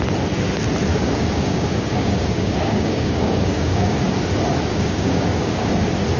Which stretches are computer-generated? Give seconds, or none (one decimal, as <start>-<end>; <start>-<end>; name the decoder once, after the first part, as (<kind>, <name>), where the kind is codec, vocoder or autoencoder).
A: 0.9-4.0 (codec, DAC); 4.7-5.7